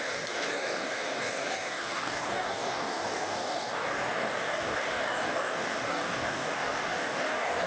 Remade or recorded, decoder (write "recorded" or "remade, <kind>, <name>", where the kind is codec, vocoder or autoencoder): remade, codec, DAC